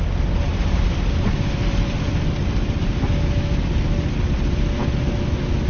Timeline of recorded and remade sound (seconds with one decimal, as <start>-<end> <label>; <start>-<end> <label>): 0.0-0.5 recorded; 0.5-2.4 remade; 2.4-5.7 recorded